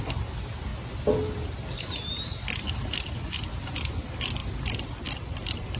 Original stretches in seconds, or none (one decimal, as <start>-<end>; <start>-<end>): 0.0-0.7; 3.1-4.4